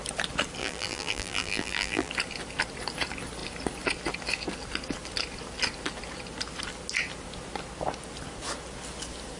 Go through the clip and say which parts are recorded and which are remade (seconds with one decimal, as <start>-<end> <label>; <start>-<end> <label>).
0.0-0.6 recorded; 0.6-2.1 remade; 2.1-9.4 recorded